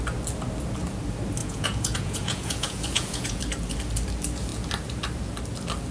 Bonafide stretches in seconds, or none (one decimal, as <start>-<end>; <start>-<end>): 0.0-1.4; 3.4-5.9